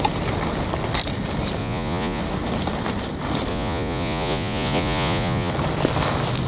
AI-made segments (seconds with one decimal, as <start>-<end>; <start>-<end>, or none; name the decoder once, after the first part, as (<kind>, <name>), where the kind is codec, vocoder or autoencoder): 1.6-2.2 (vocoder, Vocos); 3.5-5.5

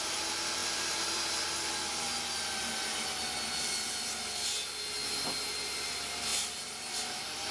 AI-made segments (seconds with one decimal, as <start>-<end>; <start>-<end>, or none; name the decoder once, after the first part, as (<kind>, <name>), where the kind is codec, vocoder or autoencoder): none

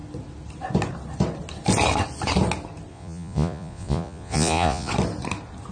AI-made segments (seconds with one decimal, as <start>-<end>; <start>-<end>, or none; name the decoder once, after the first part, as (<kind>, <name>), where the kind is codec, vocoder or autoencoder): 2.9-4.9 (vocoder, Vocos)

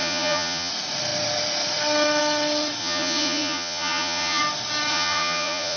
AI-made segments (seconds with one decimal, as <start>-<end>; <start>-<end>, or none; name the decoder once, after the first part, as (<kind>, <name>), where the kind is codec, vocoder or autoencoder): 0.0-0.7 (vocoder, Vocos); 2.8-4.4; 4.9-5.8